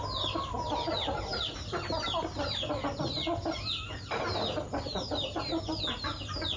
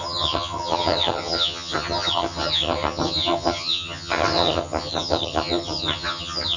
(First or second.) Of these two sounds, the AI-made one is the second